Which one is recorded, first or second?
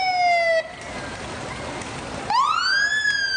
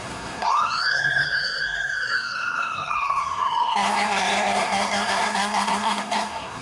first